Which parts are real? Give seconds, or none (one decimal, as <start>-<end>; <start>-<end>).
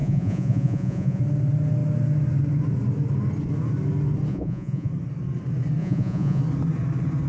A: 1.2-4.3; 4.9-5.8; 6.4-7.3